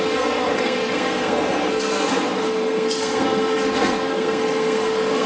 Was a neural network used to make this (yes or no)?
yes